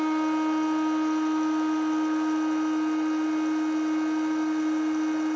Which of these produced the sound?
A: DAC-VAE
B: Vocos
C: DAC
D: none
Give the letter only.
D